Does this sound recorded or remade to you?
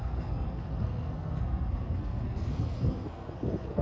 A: remade